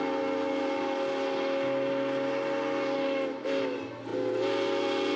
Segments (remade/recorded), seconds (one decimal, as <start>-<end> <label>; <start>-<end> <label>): 0.0-5.2 recorded